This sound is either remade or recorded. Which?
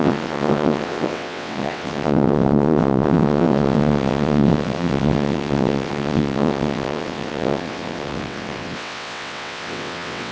remade